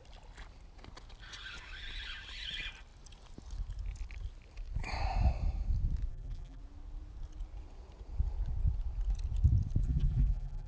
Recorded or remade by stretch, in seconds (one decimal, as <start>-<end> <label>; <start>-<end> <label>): 0.0-6.1 recorded; 6.1-6.6 remade; 6.6-9.8 recorded; 9.8-10.7 remade